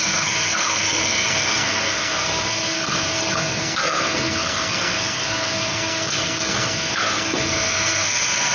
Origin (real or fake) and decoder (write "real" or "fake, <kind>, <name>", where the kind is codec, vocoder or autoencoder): fake, codec, SNAC